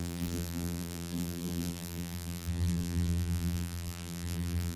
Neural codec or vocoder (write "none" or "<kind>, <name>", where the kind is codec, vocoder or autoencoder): vocoder, BigVGAN v2